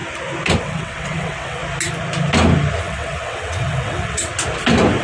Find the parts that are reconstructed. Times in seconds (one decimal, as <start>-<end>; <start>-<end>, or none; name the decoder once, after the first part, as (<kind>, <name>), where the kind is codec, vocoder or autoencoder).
0.6-1.6 (vocoder, WaveNeXt); 2.8-4.3